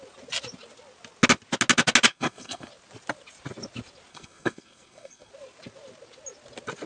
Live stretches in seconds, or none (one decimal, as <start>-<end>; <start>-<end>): 0.0-2.1; 2.7-4.1; 5.3-6.9